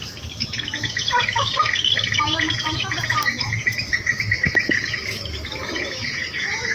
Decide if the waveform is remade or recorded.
remade